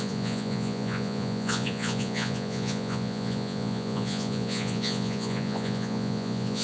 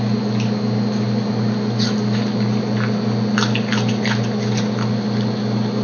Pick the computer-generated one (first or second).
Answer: first